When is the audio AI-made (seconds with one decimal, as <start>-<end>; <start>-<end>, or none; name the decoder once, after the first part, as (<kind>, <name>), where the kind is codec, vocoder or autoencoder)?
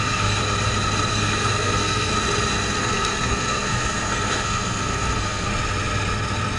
0.0-0.4 (codec, SNAC); 1.1-2.1; 2.8-5.5